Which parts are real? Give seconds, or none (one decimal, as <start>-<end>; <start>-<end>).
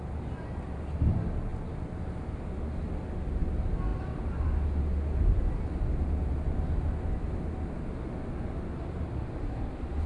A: 0.0-10.1